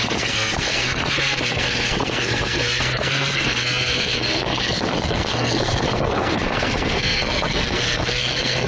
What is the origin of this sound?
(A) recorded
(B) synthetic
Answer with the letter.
B